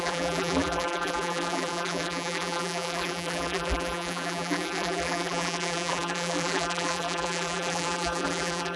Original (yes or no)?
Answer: no